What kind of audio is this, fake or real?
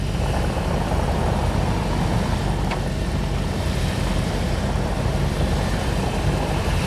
fake